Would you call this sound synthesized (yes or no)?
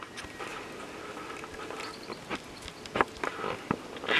no